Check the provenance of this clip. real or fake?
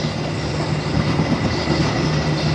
real